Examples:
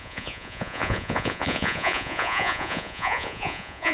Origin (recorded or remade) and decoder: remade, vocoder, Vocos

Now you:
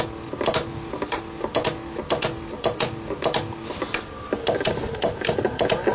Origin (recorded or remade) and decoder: recorded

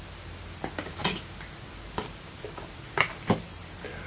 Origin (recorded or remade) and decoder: recorded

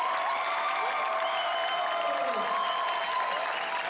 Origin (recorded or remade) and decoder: recorded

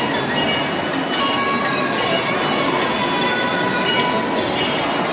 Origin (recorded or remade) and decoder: recorded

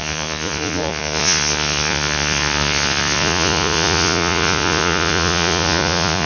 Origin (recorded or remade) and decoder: remade, vocoder, Vocos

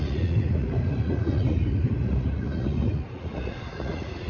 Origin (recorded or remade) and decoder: remade, vocoder, Vocos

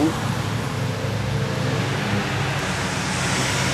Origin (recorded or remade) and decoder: recorded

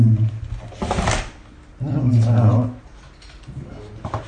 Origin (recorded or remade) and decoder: recorded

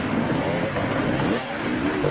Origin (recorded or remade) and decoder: recorded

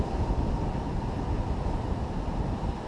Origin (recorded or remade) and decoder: recorded